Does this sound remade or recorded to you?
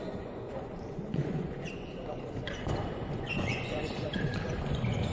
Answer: remade